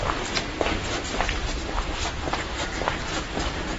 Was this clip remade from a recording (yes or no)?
no